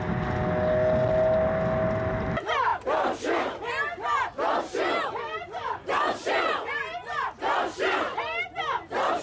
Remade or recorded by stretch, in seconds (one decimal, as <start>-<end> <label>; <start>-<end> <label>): 0.0-9.2 recorded